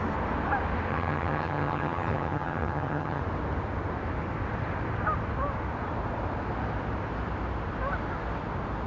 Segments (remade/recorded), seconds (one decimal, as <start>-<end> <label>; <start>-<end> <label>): 0.0-0.9 recorded; 0.9-3.2 remade; 3.2-8.9 recorded